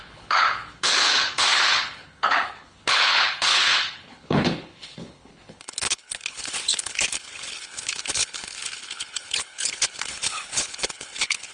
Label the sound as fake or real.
fake